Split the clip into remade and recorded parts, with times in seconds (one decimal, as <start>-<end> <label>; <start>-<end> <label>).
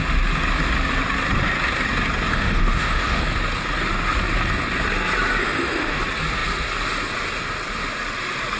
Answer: 0.0-2.3 recorded; 2.3-3.2 remade; 3.2-5.4 recorded; 5.4-6.0 remade; 6.0-8.6 recorded